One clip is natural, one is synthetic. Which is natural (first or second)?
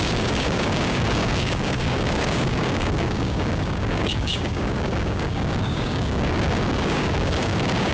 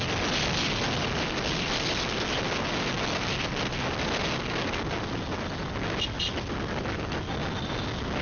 second